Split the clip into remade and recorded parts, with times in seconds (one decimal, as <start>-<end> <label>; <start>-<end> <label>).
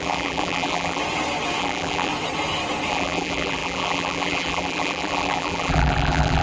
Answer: 0.0-1.0 remade; 1.0-1.6 recorded; 1.6-2.1 remade; 2.1-2.9 recorded; 2.9-6.4 remade